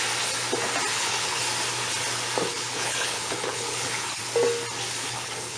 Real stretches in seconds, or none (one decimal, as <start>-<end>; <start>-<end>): 0.0-0.9; 1.4-2.5; 4.2-5.0